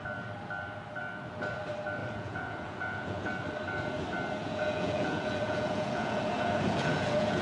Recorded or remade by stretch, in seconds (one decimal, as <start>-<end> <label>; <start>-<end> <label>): 0.0-2.0 recorded; 2.0-3.3 remade; 3.3-4.4 recorded; 4.4-7.4 remade